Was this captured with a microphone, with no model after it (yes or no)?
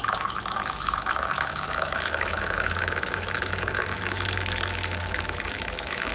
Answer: no